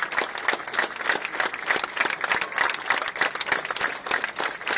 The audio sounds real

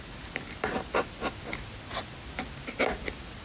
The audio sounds real